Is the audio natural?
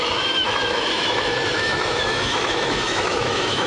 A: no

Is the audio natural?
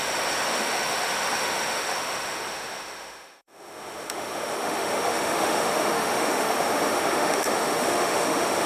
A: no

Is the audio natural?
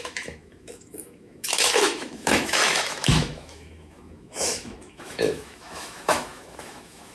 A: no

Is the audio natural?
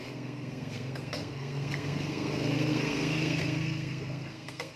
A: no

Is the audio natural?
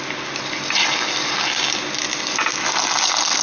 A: yes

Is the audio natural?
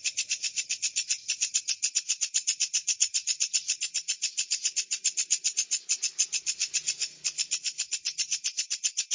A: yes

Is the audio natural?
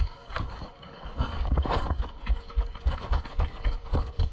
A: no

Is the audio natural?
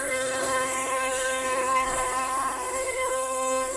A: no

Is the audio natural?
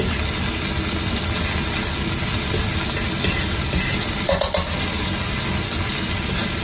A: yes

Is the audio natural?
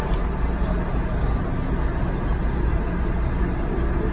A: yes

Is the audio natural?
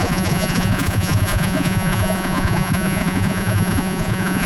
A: no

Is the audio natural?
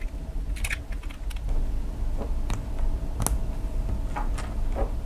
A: yes